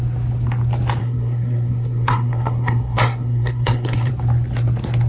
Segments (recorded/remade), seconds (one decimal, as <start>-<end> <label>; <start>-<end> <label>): 0.0-1.0 recorded; 1.0-4.1 remade; 4.1-5.1 recorded